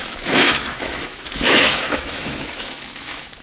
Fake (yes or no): yes